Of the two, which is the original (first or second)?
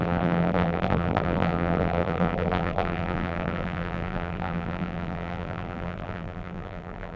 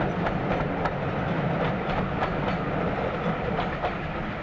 second